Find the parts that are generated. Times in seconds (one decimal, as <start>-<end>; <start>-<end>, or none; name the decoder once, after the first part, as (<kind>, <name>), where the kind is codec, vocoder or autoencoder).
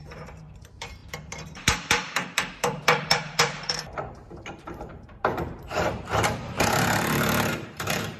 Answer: 0.0-8.2 (vocoder, BigVGAN v2)